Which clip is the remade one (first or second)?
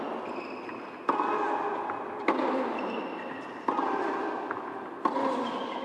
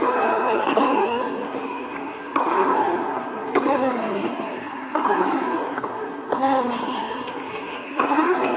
second